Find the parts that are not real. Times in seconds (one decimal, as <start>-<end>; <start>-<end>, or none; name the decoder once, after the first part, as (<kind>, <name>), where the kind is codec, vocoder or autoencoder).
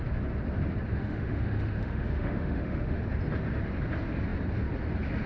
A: 0.9-3.0 (autoencoder, DAC-VAE)